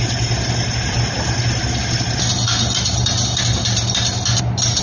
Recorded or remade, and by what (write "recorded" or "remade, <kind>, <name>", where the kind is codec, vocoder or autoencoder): recorded